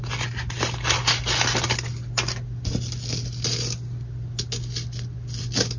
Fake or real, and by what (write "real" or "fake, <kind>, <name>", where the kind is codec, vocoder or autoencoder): real